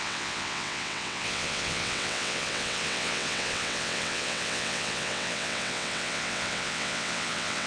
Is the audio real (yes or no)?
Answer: no